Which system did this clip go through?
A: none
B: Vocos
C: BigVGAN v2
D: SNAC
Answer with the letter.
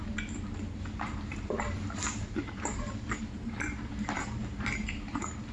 C